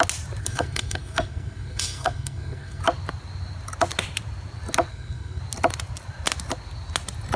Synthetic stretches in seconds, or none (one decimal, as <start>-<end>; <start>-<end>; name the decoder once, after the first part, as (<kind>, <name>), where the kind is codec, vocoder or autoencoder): 0.4-2.8 (codec, SNAC); 4.9-5.4